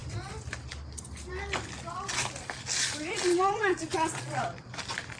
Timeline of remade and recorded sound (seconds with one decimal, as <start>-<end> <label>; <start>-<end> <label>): 0.0-3.3 recorded; 3.3-4.4 remade; 4.4-5.2 recorded